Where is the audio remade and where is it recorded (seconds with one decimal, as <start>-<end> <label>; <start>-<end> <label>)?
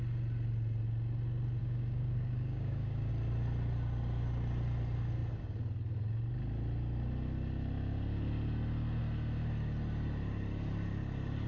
0.0-1.6 recorded; 1.6-3.1 remade; 3.1-11.5 recorded